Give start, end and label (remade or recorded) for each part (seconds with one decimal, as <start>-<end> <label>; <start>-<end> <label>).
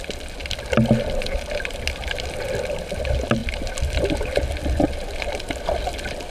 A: 0.0-6.3 recorded